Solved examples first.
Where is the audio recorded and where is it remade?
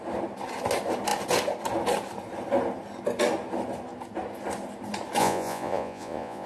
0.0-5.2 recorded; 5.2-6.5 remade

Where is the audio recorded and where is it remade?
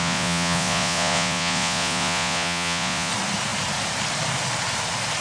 0.0-3.1 remade; 3.1-5.2 recorded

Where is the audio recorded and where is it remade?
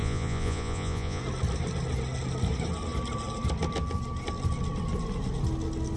0.0-1.2 remade; 1.2-6.0 recorded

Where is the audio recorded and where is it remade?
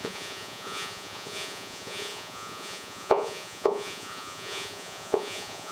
0.0-5.7 remade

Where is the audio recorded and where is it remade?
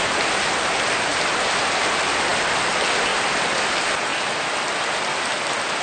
0.0-5.8 recorded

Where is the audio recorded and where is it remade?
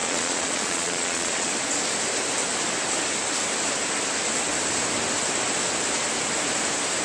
0.0-1.5 remade; 1.5-7.0 recorded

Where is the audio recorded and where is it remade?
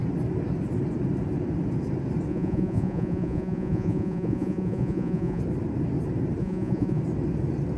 0.0-2.3 recorded; 2.3-5.4 remade; 5.4-6.4 recorded; 6.4-7.0 remade; 7.0-7.8 recorded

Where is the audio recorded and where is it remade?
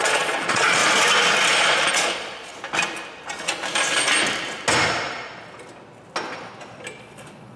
0.0-0.8 remade; 0.8-1.9 recorded; 1.9-2.5 remade; 2.5-7.0 recorded; 7.0-7.6 remade